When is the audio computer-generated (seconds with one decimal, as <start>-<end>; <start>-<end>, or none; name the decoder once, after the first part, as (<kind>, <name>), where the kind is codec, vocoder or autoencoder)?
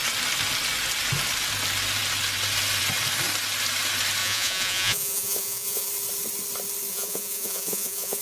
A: 4.2-5.9 (vocoder, Vocos); 6.9-8.2